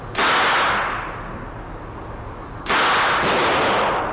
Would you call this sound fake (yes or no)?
no